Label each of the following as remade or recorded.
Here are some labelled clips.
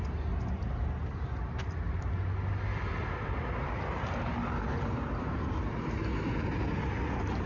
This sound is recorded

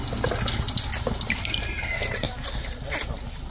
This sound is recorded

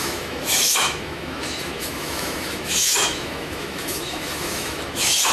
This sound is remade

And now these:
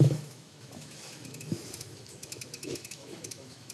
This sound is remade